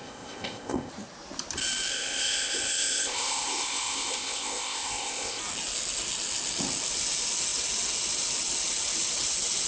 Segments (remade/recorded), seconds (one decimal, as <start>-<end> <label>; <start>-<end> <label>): 0.0-0.9 remade; 0.9-1.9 recorded; 1.9-5.4 remade; 5.4-9.7 recorded